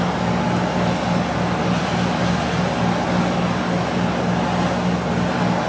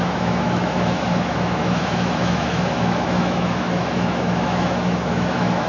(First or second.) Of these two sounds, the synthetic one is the second